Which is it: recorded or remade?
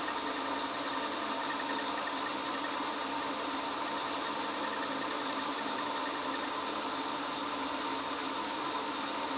recorded